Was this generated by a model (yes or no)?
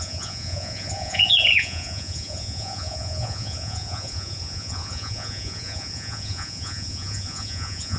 yes